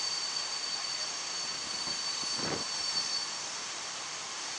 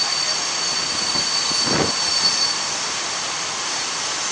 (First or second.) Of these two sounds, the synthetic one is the first